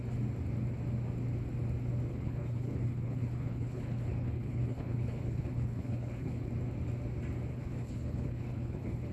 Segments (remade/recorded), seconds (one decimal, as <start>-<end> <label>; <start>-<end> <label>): 0.0-2.1 recorded; 2.1-6.5 remade; 6.5-7.5 recorded; 7.5-9.1 remade